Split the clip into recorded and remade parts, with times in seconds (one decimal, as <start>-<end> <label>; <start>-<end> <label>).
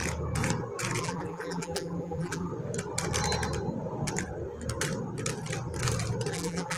0.0-1.0 recorded; 1.0-2.5 remade; 2.5-6.3 recorded; 6.3-6.8 remade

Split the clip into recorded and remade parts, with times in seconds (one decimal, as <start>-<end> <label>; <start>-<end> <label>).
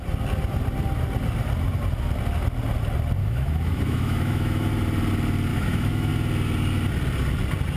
0.0-3.2 recorded; 3.2-4.7 remade; 4.7-5.5 recorded; 5.5-6.1 remade; 6.1-7.8 recorded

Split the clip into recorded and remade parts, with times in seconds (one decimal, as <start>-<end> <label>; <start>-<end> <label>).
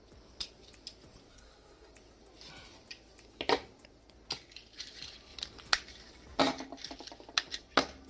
0.0-1.3 recorded; 1.3-1.9 remade; 1.9-8.1 recorded